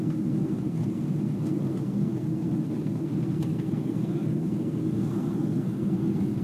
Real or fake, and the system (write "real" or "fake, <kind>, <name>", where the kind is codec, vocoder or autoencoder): fake, codec, SNAC